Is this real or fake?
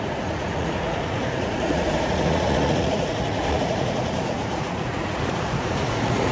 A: fake